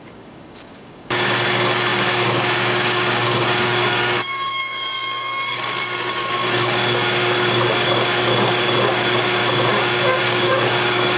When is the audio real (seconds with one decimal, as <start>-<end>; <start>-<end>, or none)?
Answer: 9.4-10.2